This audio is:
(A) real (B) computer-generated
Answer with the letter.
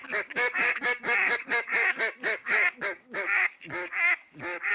B